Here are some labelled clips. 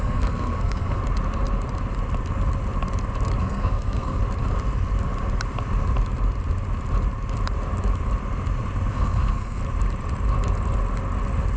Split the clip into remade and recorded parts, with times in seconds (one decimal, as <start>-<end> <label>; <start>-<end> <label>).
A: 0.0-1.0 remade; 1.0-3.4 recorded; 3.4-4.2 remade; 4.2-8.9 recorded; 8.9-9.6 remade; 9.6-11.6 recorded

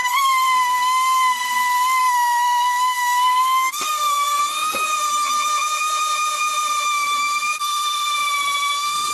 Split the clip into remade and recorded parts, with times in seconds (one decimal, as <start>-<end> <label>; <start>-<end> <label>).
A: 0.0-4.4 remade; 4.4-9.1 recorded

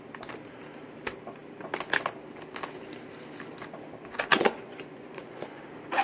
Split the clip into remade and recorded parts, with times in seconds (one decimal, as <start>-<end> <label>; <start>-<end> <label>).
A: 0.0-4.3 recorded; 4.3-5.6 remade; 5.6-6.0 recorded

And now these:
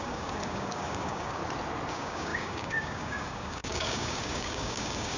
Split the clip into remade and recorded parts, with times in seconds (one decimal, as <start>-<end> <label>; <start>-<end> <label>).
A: 0.0-1.4 remade; 1.4-1.9 recorded; 1.9-5.2 remade

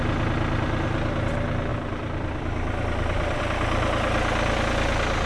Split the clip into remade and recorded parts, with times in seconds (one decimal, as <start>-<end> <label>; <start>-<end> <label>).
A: 0.0-1.7 recorded; 1.7-3.4 remade; 3.4-5.3 recorded

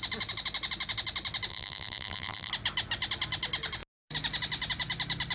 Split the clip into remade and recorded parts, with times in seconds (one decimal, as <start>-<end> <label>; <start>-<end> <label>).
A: 0.0-1.5 recorded; 1.5-2.5 remade; 2.5-5.3 recorded